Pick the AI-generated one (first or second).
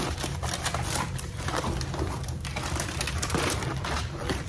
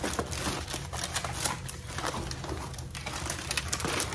first